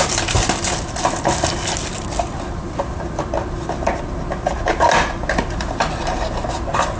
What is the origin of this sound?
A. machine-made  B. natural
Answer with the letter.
B